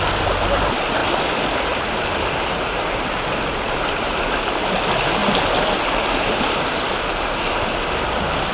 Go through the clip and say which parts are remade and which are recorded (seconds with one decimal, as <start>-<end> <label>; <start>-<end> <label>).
0.0-1.0 recorded; 1.0-4.3 remade; 4.3-8.5 recorded